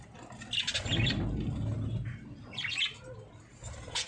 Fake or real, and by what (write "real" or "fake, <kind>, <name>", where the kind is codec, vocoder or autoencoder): real